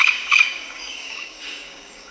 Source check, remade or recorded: remade